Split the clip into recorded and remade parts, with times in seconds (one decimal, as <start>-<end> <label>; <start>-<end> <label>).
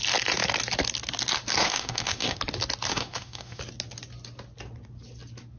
0.0-1.6 recorded; 1.6-2.4 remade; 2.4-2.9 recorded; 2.9-3.6 remade; 3.6-5.6 recorded